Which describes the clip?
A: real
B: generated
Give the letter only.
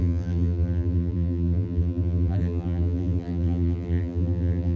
B